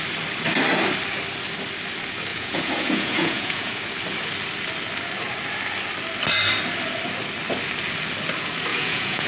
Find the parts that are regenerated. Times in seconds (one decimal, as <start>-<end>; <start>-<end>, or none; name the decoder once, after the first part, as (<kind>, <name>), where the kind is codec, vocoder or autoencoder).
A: 2.3-3.8 (vocoder, Vocos); 8.7-9.3